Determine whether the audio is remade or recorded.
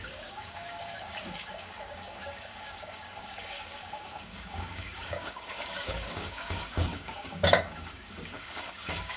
remade